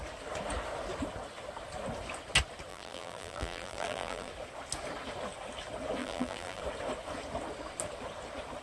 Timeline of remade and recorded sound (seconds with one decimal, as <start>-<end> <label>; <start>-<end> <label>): 0.0-2.7 recorded; 2.7-4.3 remade; 4.3-6.0 recorded; 6.0-6.6 remade; 6.6-8.6 recorded